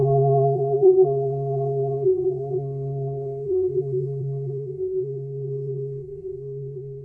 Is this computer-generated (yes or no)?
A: yes